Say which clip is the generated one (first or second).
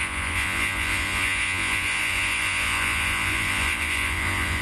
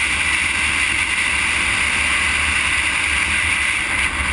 first